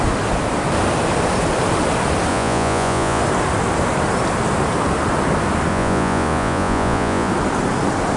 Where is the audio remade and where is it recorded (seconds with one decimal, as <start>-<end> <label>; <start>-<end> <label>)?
0.0-2.3 recorded; 2.3-3.2 remade; 3.2-5.7 recorded; 5.7-7.3 remade; 7.3-8.2 recorded